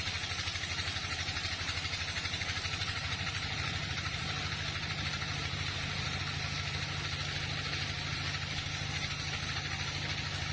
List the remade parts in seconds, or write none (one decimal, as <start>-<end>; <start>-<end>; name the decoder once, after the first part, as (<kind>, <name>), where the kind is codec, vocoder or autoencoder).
0.9-6.2 (vocoder, BigVGAN v2)